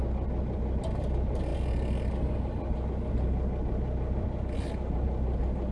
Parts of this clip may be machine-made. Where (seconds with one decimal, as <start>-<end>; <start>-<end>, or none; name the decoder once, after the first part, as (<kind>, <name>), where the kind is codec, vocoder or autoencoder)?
none